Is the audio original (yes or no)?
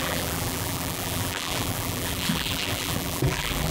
no